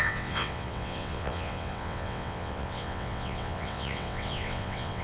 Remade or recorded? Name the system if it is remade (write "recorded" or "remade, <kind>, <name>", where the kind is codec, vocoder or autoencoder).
remade, vocoder, WaveNeXt